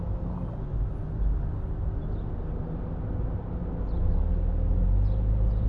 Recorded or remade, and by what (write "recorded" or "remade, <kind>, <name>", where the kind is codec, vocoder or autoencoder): recorded